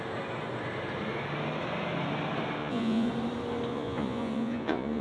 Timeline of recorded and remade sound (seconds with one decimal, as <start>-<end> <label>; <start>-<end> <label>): 0.0-2.6 recorded; 2.6-3.1 remade; 3.1-3.7 recorded; 3.7-5.0 remade

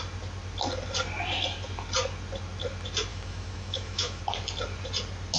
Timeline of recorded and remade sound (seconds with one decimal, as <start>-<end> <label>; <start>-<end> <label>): 0.0-3.1 recorded; 3.1-4.2 remade; 4.2-5.4 recorded